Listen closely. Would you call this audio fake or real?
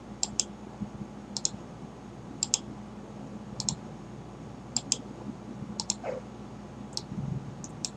real